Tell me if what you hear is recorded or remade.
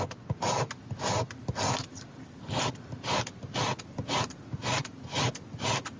recorded